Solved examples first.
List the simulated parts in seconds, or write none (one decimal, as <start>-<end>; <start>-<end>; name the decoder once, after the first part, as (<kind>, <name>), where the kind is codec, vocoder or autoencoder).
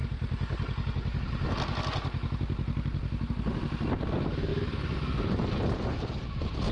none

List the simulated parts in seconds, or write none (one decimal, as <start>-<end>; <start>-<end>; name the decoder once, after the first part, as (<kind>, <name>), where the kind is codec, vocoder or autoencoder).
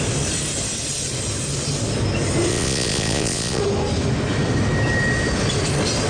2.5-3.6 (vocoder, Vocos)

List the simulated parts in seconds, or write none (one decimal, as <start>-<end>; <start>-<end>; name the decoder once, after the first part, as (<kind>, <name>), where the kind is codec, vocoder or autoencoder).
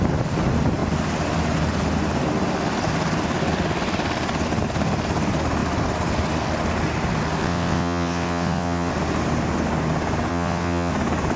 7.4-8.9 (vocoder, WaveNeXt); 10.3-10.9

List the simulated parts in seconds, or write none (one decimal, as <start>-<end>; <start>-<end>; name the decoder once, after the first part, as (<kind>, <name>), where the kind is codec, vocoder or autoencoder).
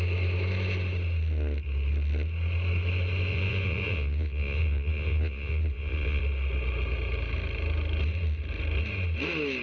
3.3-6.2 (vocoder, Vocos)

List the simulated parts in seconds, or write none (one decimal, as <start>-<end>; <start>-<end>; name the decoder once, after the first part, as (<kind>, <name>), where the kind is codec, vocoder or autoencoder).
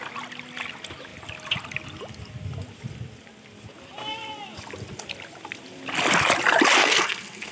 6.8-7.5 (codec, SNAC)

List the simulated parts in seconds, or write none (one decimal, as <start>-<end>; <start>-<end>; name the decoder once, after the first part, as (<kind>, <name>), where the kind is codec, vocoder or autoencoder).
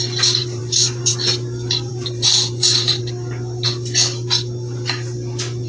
0.4-1.0 (vocoder, BigVGAN v2); 1.9-3.0